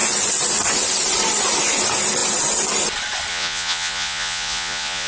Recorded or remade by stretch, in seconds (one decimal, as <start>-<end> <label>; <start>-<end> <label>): 0.0-3.3 recorded; 3.3-5.1 remade